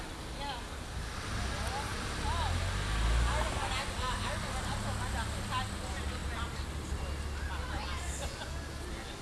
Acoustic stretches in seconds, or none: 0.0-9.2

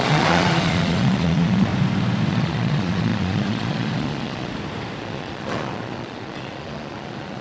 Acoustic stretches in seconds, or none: 1.7-2.3; 4.5-5.0

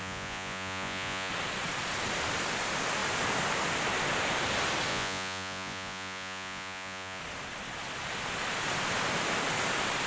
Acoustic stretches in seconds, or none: 1.3-4.9; 7.2-10.1

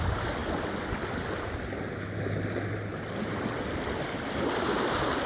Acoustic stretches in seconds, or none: 0.0-5.3

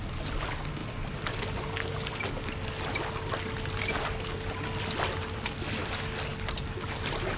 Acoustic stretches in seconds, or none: 0.0-7.4

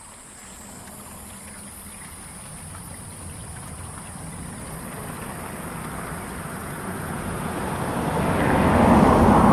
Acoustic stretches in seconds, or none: 0.0-6.6; 7.6-9.5

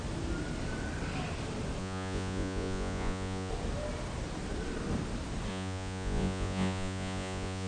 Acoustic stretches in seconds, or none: 0.0-1.8; 3.5-5.5